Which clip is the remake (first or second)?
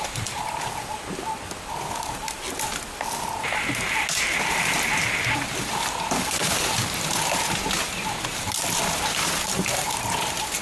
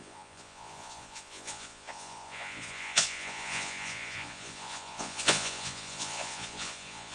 second